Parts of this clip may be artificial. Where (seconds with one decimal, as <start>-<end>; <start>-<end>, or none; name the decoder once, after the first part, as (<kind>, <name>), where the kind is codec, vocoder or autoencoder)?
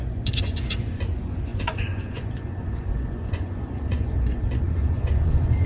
0.0-5.7 (vocoder, Vocos)